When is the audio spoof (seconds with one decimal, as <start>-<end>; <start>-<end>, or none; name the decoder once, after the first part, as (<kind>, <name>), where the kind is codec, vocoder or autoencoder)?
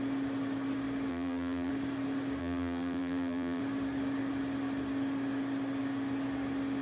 1.1-1.7 (vocoder, BigVGAN v2); 2.4-3.6